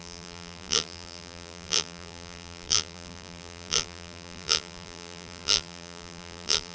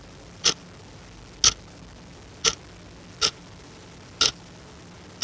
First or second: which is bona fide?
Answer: second